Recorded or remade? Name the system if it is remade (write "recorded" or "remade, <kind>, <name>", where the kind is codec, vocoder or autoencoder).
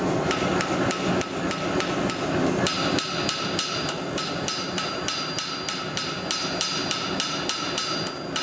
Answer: recorded